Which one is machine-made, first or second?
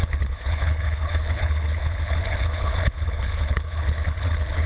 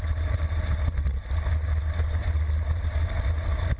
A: first